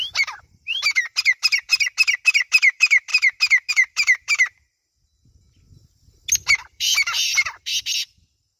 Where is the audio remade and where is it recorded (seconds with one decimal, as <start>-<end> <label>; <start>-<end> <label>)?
0.0-1.7 remade; 1.7-2.3 recorded; 2.3-3.1 remade; 3.1-3.7 recorded; 3.7-4.7 remade; 4.7-6.5 recorded; 6.5-7.7 remade; 7.7-8.6 recorded